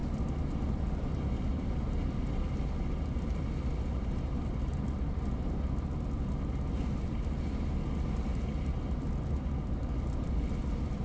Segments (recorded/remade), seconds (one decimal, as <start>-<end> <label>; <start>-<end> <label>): 0.0-11.0 recorded

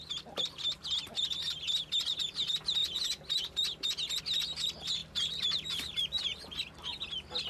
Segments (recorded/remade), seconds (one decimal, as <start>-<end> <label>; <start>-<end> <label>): 0.0-5.0 recorded; 5.0-6.6 remade; 6.6-7.5 recorded

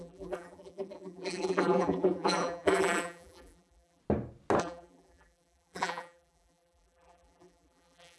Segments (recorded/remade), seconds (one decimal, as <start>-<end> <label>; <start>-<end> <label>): 0.0-4.0 remade; 4.0-4.6 recorded; 4.6-8.2 remade

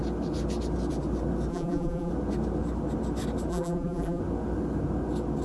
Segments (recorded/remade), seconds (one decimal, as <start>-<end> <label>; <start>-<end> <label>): 0.0-1.5 recorded; 1.5-2.1 remade; 2.1-3.5 recorded; 3.5-4.2 remade; 4.2-5.4 recorded